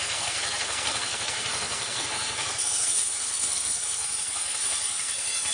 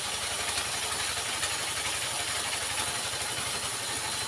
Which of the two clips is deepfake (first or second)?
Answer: first